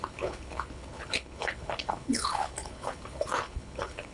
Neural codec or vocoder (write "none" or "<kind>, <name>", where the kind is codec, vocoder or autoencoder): codec, HILCodec